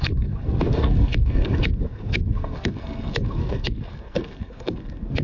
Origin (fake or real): fake